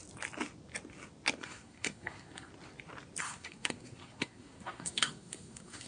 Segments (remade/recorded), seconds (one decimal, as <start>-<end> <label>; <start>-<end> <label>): 0.0-1.4 recorded; 1.4-2.5 remade; 2.5-3.2 recorded; 3.2-5.9 remade